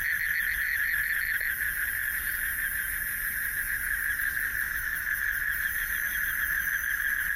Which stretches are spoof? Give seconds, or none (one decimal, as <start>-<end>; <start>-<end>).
none